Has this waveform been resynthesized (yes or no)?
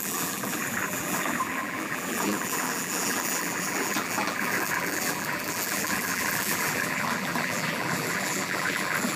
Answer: yes